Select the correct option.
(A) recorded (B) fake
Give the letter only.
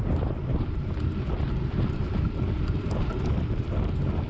A